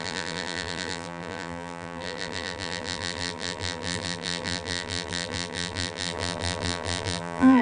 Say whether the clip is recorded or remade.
remade